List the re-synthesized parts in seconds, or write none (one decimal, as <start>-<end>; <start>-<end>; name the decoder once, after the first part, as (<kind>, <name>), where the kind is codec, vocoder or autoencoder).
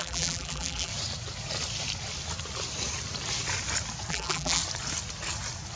0.0-0.9 (vocoder, BigVGAN v2); 4.1-4.6